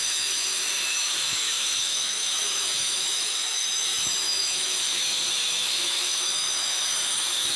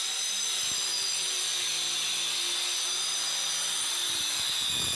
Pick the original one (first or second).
second